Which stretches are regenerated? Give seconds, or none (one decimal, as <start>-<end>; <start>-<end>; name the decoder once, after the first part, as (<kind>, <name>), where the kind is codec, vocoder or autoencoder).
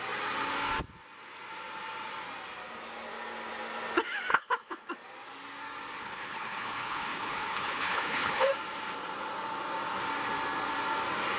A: 4.3-4.9 (codec, HILCodec); 6.0-8.5